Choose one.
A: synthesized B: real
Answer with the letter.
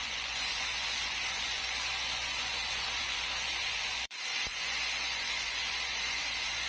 A